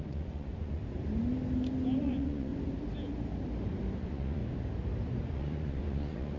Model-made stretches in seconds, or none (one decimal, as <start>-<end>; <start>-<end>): 0.0-0.8; 2.0-2.5; 4.0-4.4; 5.3-6.4